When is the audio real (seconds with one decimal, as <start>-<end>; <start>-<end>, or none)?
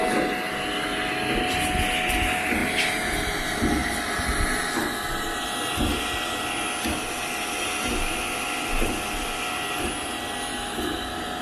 0.0-11.4